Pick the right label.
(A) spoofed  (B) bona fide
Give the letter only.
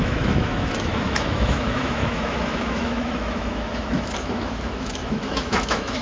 A